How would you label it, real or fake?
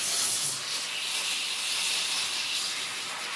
real